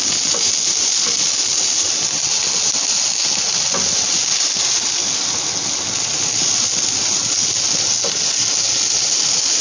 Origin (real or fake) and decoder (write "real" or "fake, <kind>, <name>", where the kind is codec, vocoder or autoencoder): real